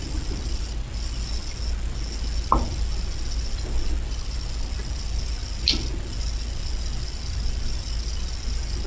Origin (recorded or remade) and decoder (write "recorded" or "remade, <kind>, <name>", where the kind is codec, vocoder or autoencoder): recorded